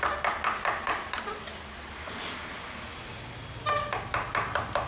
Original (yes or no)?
yes